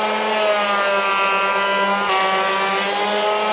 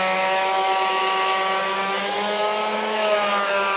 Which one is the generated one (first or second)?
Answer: second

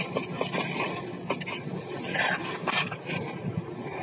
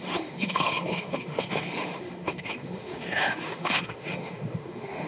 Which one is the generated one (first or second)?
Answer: second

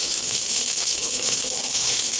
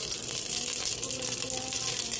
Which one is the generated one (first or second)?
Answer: first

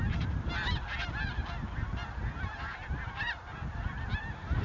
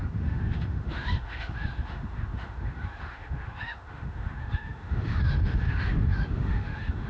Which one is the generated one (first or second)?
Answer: second